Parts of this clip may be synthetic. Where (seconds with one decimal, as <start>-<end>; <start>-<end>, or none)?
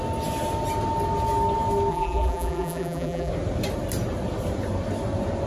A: 1.9-3.3